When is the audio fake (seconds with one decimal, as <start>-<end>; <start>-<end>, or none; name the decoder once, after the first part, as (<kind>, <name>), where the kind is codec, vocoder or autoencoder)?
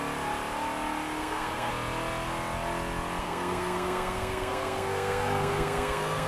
1.2-1.7 (codec, SNAC); 3.2-6.3